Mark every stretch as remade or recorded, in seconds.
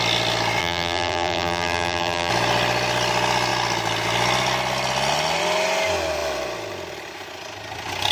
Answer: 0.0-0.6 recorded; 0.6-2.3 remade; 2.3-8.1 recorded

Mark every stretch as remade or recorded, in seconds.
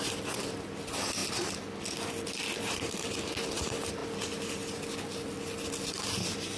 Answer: 0.0-6.6 recorded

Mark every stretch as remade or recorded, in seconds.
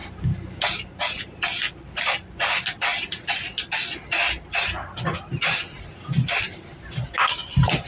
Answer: 0.0-1.2 recorded; 1.2-1.6 remade; 1.6-2.2 recorded; 2.2-2.9 remade; 2.9-6.4 recorded; 6.4-7.9 remade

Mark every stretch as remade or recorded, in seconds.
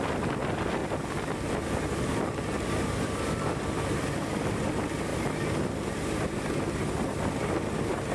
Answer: 0.0-5.1 remade; 5.1-6.9 recorded; 6.9-8.1 remade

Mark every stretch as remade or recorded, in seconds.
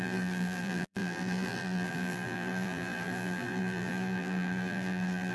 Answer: 0.0-5.3 remade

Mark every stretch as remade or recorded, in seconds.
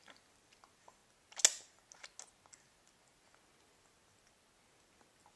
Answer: 0.0-5.4 recorded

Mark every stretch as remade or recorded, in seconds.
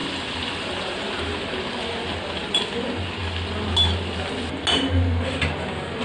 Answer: 0.0-1.2 remade; 1.2-2.1 recorded; 2.1-2.6 remade; 2.6-6.0 recorded